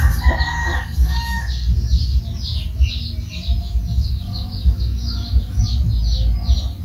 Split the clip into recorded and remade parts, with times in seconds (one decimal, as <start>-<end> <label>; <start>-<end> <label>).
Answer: 0.0-0.6 recorded; 0.6-2.2 remade; 2.2-3.6 recorded; 3.6-5.6 remade; 5.6-6.8 recorded